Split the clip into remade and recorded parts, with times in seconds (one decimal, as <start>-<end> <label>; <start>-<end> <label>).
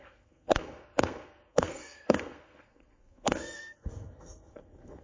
0.0-5.0 remade